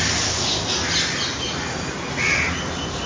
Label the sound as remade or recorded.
recorded